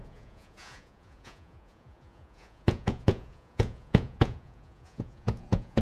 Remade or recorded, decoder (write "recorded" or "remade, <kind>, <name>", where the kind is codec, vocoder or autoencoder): remade, vocoder, Vocos